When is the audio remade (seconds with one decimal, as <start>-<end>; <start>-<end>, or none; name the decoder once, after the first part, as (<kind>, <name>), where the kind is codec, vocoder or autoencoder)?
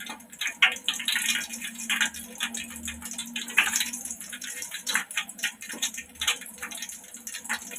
1.5-2.0 (vocoder, BigVGAN v2); 3.2-6.8